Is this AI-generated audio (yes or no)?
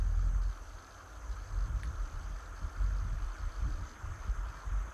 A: no